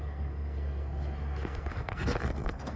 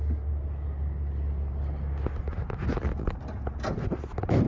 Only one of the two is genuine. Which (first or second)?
second